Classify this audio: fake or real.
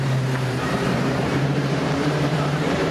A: fake